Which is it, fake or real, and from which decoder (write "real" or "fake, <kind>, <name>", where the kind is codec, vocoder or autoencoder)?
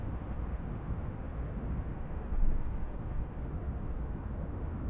fake, autoencoder, DAC-VAE